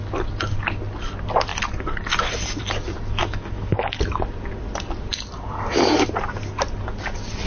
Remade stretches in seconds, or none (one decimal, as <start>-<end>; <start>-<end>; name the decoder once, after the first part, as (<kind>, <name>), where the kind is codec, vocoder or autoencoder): 3.2-4.0 (autoencoder, DAC-VAE)